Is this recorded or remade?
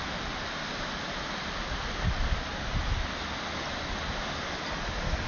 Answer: recorded